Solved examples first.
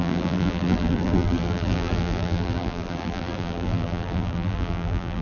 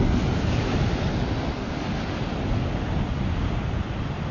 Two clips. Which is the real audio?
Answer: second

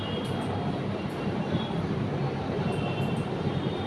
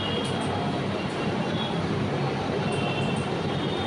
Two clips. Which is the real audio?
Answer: second